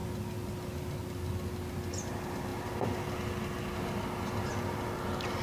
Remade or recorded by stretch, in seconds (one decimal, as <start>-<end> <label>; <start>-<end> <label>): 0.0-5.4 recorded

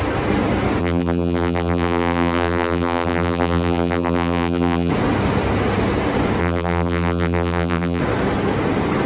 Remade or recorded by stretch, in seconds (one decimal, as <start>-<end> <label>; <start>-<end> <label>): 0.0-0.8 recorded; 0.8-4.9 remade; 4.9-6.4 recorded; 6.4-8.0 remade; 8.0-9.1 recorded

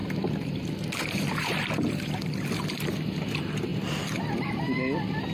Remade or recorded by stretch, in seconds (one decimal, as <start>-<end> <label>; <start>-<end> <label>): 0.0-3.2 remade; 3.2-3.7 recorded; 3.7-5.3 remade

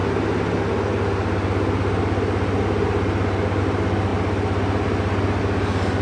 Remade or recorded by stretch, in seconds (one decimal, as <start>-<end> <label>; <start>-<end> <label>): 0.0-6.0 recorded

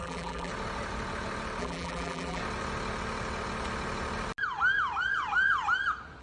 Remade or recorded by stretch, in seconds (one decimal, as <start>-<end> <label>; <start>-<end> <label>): 0.0-0.5 remade; 0.5-1.6 recorded; 1.6-2.4 remade; 2.4-6.2 recorded

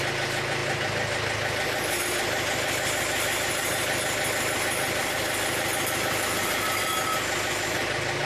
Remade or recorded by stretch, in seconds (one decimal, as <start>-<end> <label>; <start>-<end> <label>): 0.0-8.3 recorded

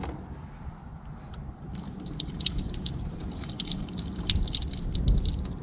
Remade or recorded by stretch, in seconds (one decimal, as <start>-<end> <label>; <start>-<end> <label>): 0.0-0.9 recorded; 0.9-4.3 remade; 4.3-5.6 recorded